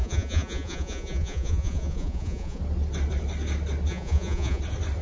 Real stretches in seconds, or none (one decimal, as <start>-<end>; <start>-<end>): 2.6-3.9; 4.6-5.0